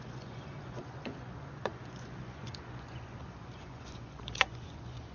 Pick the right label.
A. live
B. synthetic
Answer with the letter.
B